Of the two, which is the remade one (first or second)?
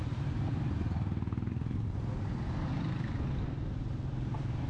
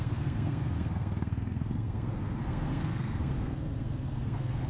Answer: second